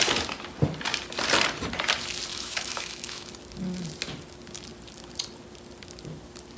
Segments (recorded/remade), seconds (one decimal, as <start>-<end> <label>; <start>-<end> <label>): 0.0-2.3 recorded; 2.3-3.3 remade; 3.3-6.6 recorded